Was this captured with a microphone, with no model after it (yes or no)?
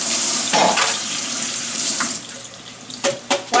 no